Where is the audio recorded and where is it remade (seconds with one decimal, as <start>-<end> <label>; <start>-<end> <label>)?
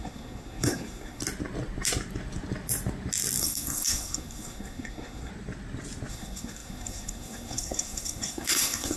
0.0-1.2 remade; 1.2-3.4 recorded; 3.4-5.3 remade; 5.3-6.1 recorded; 6.1-9.0 remade